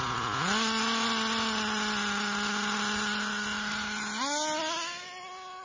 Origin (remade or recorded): recorded